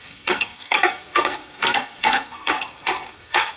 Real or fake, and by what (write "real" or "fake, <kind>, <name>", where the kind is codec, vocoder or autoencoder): fake, codec, SNAC